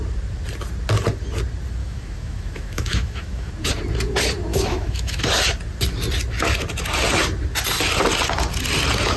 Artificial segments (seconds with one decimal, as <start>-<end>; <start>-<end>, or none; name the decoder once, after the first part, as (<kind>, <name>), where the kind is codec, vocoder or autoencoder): 1.8-3.5 (autoencoder, DAC-VAE); 4.5-5.2